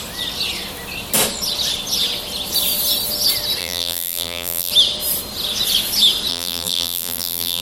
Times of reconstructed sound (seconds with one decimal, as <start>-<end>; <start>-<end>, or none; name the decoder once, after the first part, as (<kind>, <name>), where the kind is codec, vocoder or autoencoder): 3.6-4.7 (vocoder, BigVGAN v2); 6.3-7.6